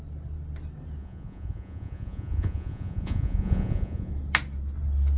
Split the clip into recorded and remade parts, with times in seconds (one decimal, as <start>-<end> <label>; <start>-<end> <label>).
0.0-1.0 recorded; 1.0-4.1 remade; 4.1-5.2 recorded